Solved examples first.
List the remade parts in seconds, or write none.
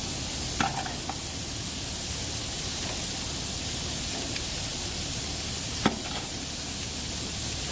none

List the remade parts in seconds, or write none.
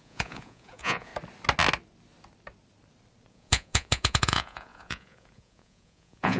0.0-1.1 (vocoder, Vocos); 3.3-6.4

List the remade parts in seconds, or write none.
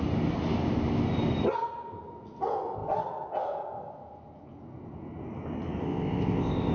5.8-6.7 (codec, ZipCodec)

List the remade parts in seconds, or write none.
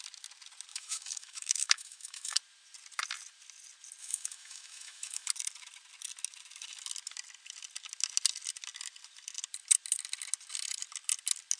0.7-2.4 (autoencoder, DAC-VAE); 4.0-5.3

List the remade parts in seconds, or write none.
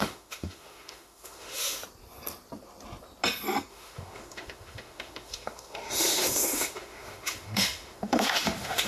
0.0-1.8 (autoencoder, DAC-VAE); 3.7-8.9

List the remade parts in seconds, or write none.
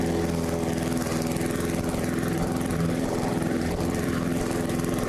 1.9-5.1 (vocoder, BigVGAN v2)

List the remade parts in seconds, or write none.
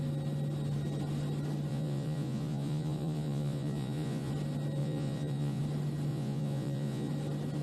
1.7-4.3 (vocoder, Vocos); 4.8-5.6; 6.1-7.1